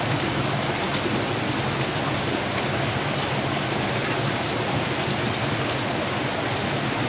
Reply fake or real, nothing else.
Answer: real